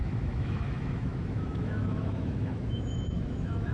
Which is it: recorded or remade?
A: remade